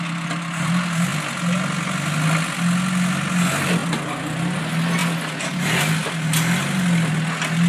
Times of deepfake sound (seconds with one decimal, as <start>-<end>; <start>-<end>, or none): none